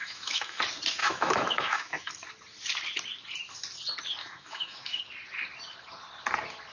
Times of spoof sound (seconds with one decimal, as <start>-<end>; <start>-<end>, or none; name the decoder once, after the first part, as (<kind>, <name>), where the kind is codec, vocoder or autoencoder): 0.0-0.6 (autoencoder, DAC-VAE); 1.0-2.1; 4.2-5.0